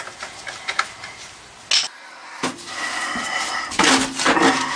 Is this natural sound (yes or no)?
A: yes